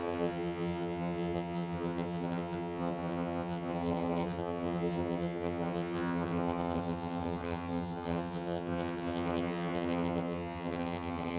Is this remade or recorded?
remade